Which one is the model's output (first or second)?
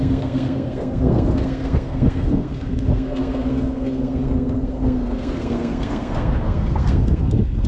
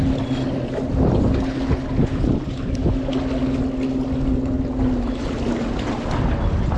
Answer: first